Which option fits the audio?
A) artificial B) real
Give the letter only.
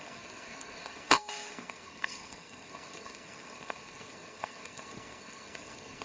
A